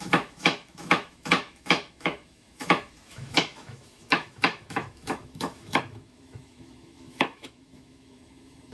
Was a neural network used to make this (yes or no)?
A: yes